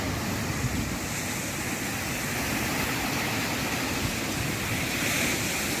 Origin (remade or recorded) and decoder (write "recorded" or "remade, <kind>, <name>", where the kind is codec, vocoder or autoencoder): recorded